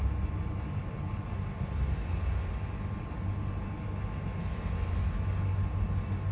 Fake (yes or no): no